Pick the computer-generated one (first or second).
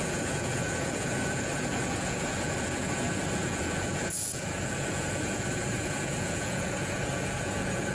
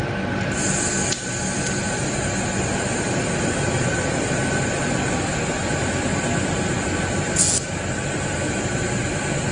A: first